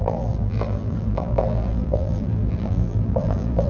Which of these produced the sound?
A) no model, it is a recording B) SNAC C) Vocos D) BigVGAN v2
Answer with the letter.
D